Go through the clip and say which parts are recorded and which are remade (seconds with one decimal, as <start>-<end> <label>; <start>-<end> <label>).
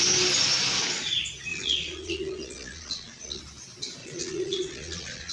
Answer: 0.0-1.5 recorded; 1.5-3.4 remade; 3.4-4.0 recorded; 4.0-5.3 remade